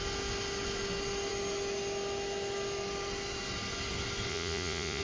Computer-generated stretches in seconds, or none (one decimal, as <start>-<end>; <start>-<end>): 4.3-5.0